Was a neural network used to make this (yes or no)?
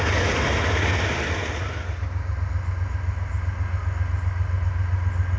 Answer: no